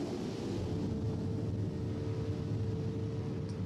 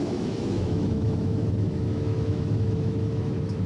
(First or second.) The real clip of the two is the first